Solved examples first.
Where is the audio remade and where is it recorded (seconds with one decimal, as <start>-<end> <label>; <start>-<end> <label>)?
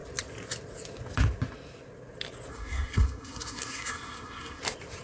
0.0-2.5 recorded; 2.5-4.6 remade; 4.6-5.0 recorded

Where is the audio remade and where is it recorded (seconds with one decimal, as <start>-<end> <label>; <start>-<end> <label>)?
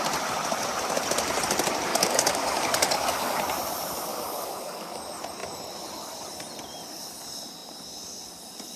0.0-1.9 recorded; 1.9-3.4 remade; 3.4-4.1 recorded; 4.1-5.0 remade; 5.0-8.8 recorded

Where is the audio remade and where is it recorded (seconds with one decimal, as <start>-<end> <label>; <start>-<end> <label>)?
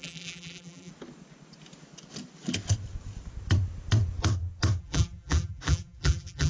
0.0-0.9 remade; 0.9-4.8 recorded; 4.8-6.5 remade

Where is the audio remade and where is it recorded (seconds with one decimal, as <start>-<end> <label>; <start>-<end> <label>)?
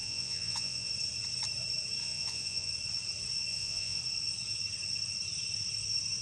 0.0-0.9 remade; 0.9-2.0 recorded; 2.0-2.7 remade; 2.7-3.5 recorded; 3.5-4.0 remade; 4.0-6.2 recorded